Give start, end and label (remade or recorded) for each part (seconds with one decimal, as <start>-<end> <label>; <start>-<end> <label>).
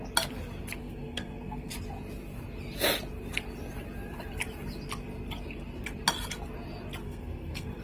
0.0-0.8 recorded; 0.8-1.7 remade; 1.7-7.0 recorded; 7.0-7.8 remade